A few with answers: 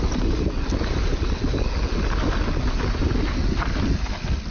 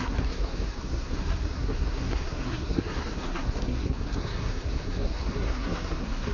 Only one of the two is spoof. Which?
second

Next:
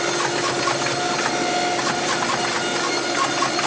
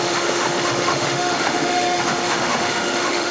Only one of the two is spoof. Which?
second